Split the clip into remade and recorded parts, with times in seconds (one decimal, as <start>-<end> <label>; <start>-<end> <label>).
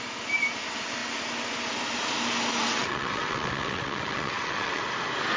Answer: 0.0-2.6 recorded; 2.6-4.8 remade; 4.8-5.4 recorded